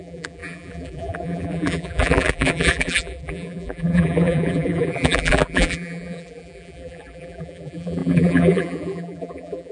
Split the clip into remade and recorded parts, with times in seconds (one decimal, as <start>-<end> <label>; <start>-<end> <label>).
0.0-9.7 remade